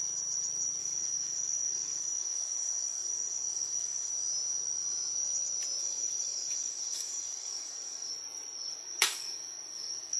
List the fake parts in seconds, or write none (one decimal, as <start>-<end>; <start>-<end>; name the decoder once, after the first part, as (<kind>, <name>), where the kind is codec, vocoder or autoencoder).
0.8-4.1 (codec, DAC); 5.8-8.1; 8.7-10.2